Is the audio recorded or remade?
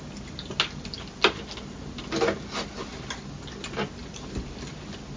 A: recorded